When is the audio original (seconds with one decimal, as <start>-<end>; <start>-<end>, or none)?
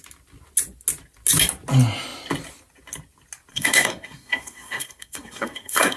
0.0-3.5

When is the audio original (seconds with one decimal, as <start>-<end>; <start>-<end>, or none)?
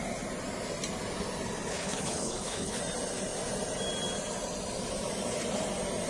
0.0-1.7; 2.8-6.1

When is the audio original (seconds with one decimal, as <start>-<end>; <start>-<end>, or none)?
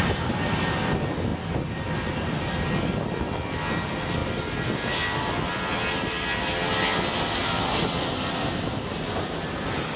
0.0-10.0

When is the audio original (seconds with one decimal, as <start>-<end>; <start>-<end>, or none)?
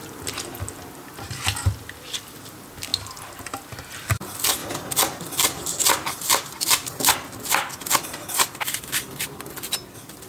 0.0-10.3